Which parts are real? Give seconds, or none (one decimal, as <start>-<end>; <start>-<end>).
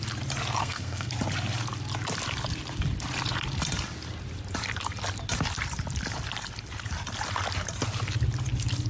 0.0-0.6; 1.1-8.9